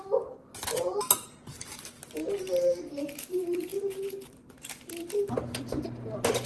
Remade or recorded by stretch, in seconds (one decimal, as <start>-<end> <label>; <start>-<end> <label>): 0.0-6.5 remade